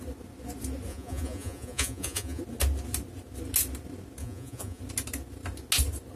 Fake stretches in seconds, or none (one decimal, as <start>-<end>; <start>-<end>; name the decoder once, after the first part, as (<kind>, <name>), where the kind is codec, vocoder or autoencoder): 0.9-2.4 (vocoder, Vocos); 4.2-4.8